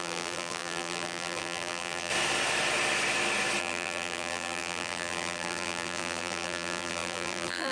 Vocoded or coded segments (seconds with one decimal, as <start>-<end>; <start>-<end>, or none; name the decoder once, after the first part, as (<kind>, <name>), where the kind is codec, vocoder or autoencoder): 0.0-2.1 (vocoder, BigVGAN v2); 3.6-7.7